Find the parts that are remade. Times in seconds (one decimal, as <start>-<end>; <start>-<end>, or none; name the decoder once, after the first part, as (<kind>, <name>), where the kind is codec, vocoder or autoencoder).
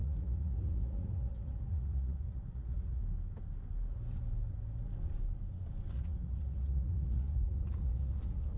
0.0-3.0 (vocoder, Vocos); 5.9-8.6